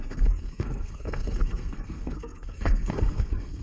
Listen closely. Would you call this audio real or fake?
fake